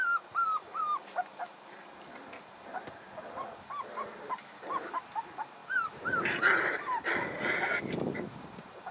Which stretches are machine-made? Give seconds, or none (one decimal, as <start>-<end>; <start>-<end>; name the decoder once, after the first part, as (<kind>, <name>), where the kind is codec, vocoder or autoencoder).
none